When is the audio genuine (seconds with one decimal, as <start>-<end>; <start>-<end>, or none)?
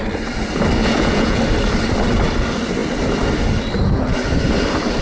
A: 0.0-0.8; 1.4-5.0